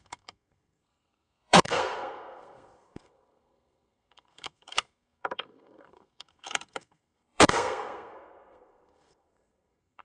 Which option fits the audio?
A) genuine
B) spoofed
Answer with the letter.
B